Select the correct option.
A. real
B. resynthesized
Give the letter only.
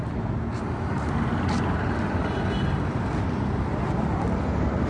A